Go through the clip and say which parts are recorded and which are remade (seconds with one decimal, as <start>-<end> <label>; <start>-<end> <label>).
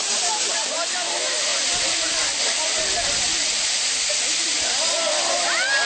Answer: 0.0-5.8 recorded